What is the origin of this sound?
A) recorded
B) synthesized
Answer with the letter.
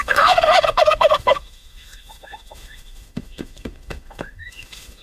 B